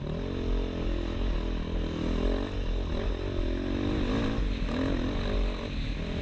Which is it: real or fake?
real